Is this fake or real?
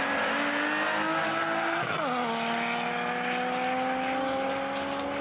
real